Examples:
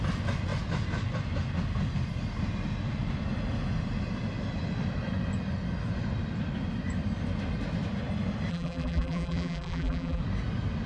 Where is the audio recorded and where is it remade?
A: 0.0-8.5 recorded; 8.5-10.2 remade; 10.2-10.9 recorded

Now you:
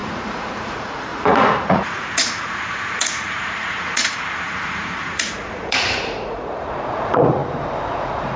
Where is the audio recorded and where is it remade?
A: 0.0-7.4 remade; 7.4-8.0 recorded; 8.0-8.4 remade

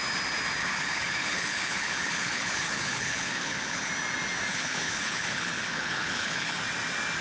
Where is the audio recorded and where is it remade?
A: 0.0-0.6 recorded; 0.6-3.9 remade; 3.9-4.5 recorded; 4.5-6.6 remade; 6.6-7.2 recorded

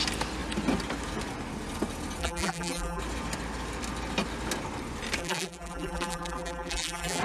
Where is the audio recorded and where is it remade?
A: 0.0-2.2 recorded; 2.2-3.0 remade; 3.0-5.2 recorded; 5.2-7.2 remade

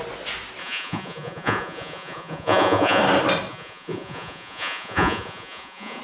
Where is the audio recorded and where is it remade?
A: 0.0-0.6 recorded; 0.6-3.0 remade; 3.0-3.5 recorded; 3.5-6.0 remade

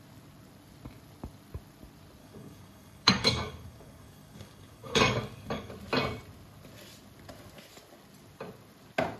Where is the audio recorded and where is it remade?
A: 0.0-2.2 recorded; 2.2-5.7 remade; 5.7-9.2 recorded

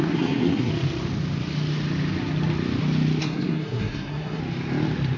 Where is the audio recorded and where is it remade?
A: 0.0-0.7 remade; 0.7-3.2 recorded; 3.2-4.4 remade; 4.4-5.2 recorded

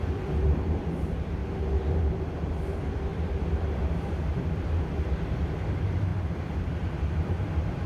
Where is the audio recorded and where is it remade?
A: 0.0-1.4 remade; 1.4-2.1 recorded; 2.1-7.9 remade